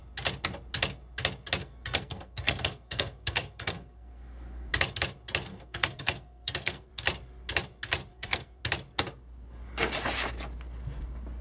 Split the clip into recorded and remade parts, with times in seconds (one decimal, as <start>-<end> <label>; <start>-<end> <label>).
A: 0.0-1.6 recorded; 1.6-4.7 remade; 4.7-5.5 recorded; 5.5-6.9 remade; 6.9-8.1 recorded; 8.1-8.6 remade; 8.6-11.4 recorded